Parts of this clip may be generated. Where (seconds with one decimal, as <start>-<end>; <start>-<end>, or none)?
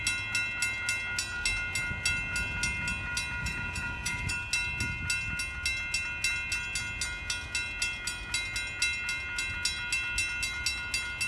3.4-4.3